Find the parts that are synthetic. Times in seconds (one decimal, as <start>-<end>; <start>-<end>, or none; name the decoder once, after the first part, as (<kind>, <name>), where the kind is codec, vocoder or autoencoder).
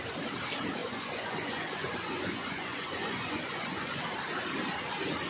0.8-4.0 (vocoder, Vocos)